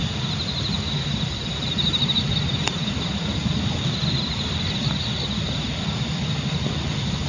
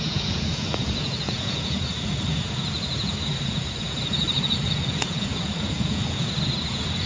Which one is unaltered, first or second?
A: first